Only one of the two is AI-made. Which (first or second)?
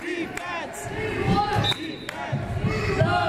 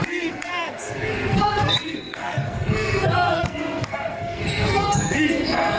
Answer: second